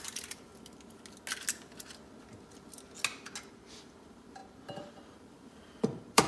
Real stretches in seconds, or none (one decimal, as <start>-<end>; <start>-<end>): 0.5-3.5; 4.4-4.9